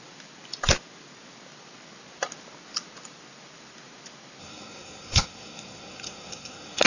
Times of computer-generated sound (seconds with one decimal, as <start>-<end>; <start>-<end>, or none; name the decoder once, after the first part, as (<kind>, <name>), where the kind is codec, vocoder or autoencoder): 4.4-6.9 (codec, SNAC)